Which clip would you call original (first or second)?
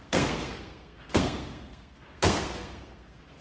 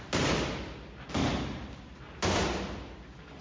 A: second